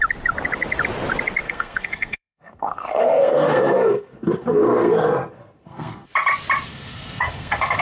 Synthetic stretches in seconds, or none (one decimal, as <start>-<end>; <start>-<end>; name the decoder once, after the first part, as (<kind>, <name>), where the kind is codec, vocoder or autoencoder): 1.4-6.1 (codec, SNAC); 6.7-7.8